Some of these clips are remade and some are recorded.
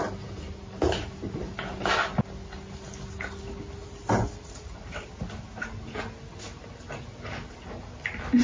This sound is recorded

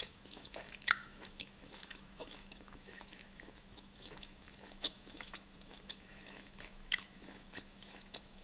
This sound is remade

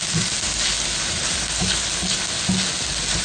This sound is recorded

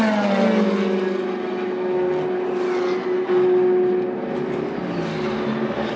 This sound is recorded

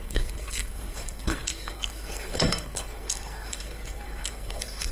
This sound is remade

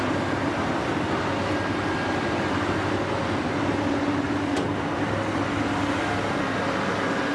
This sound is recorded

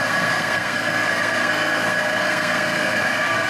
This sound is remade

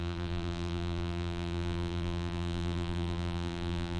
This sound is remade